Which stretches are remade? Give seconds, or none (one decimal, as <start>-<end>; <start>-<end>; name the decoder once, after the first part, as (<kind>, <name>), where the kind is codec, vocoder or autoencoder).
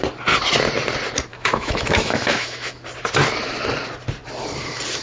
1.3-2.7 (autoencoder, DAC-VAE)